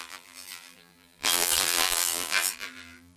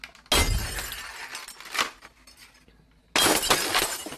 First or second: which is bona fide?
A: second